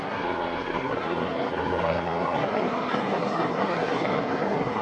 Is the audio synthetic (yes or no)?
yes